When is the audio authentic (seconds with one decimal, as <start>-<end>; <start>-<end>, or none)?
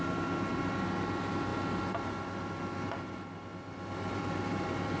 0.0-5.0